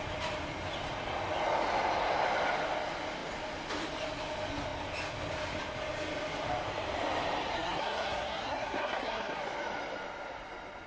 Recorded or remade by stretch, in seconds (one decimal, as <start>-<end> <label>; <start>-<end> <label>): 0.0-7.5 recorded; 7.5-9.4 remade; 9.4-10.9 recorded